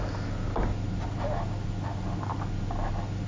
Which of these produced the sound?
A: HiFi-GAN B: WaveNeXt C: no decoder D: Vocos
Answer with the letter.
C